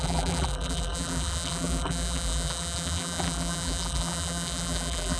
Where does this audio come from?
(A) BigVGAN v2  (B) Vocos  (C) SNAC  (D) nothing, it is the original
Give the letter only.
A